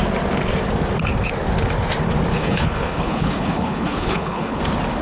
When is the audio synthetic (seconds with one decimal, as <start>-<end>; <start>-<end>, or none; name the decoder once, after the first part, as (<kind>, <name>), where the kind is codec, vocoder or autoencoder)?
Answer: 2.3-4.6 (codec, HILCodec)